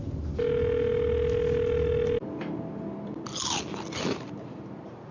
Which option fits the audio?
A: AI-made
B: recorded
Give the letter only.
B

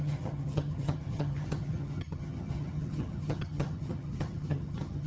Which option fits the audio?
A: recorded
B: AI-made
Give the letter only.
B